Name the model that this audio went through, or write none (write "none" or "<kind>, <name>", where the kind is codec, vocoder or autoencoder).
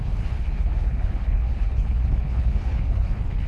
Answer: codec, HILCodec